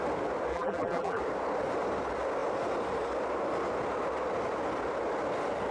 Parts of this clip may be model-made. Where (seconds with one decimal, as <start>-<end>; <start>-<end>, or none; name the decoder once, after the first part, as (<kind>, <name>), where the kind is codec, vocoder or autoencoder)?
0.5-1.2 (vocoder, BigVGAN v2)